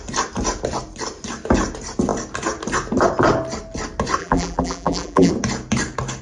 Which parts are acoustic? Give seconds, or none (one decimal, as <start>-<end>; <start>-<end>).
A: 0.0-4.2; 5.3-6.2